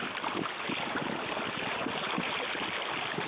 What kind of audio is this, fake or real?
real